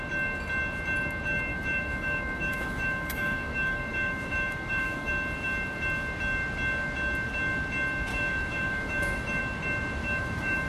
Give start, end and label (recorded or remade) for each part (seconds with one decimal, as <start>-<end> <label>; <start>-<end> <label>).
0.0-1.5 recorded; 1.5-5.1 remade; 5.1-8.1 recorded; 8.1-9.4 remade; 9.4-10.0 recorded; 10.0-10.7 remade